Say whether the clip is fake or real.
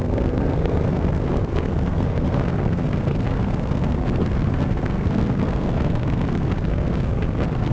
fake